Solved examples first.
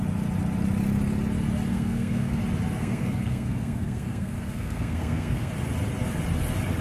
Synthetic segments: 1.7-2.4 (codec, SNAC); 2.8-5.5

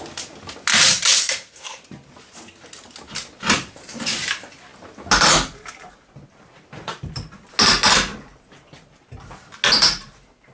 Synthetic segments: 1.2-1.8 (codec, SNAC)

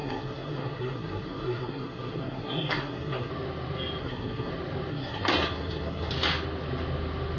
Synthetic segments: 0.0-3.3 (codec, SNAC); 4.0-4.5; 4.9-6.1

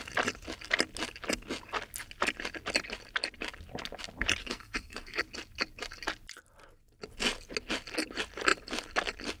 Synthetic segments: 4.4-5.2 (codec, SNAC)